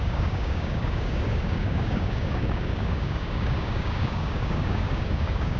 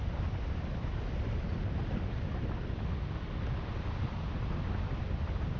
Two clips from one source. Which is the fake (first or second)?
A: first